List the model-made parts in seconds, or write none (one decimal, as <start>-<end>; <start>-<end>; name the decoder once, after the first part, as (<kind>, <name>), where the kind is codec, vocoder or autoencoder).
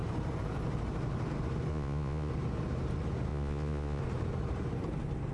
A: 1.7-2.3 (vocoder, Vocos); 3.3-4.0